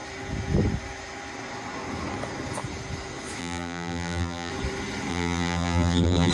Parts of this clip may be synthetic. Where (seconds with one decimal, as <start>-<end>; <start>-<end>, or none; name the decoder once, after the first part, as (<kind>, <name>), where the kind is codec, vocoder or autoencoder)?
3.4-4.5 (vocoder, BigVGAN v2); 5.1-6.3